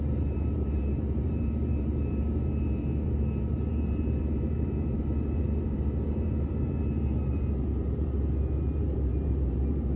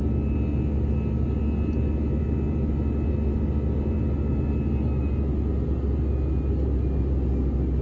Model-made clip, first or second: first